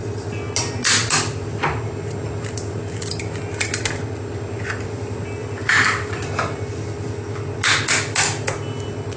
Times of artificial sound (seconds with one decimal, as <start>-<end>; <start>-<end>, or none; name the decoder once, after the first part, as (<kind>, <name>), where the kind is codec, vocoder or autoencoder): 5.4-6.7 (vocoder, BigVGAN v2)